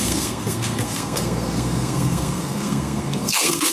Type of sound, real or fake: fake